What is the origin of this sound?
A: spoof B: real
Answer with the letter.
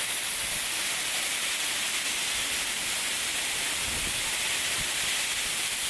A